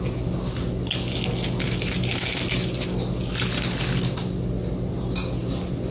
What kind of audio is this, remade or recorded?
recorded